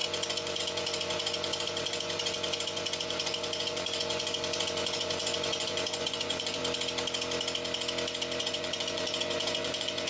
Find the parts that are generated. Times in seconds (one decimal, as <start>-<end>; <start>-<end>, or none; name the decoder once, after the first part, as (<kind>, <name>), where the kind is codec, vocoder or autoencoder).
0.0-6.6 (vocoder, Vocos); 8.4-10.1